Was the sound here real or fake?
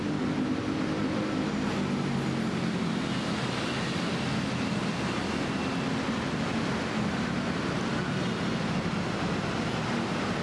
real